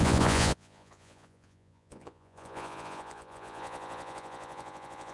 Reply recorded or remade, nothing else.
remade